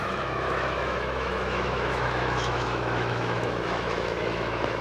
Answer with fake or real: fake